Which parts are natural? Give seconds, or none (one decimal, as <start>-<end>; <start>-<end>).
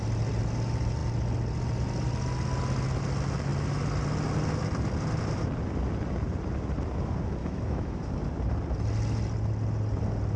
0.0-7.4; 8.0-10.4